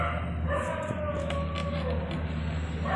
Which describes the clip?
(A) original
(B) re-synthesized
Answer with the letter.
A